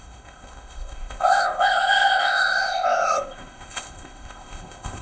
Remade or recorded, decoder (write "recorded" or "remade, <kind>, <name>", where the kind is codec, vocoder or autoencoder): remade, codec, ZipCodec